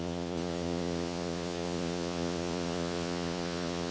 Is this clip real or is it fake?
fake